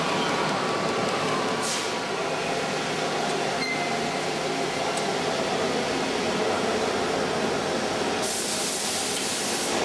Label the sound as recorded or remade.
recorded